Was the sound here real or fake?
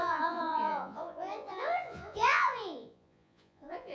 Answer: fake